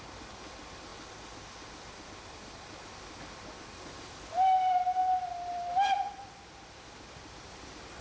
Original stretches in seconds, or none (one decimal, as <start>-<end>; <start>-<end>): 0.0-8.0